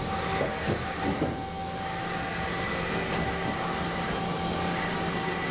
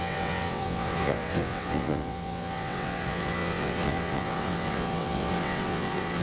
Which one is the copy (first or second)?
second